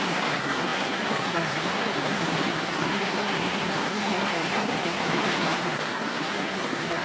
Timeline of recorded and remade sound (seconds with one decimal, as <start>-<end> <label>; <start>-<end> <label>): 0.0-7.0 remade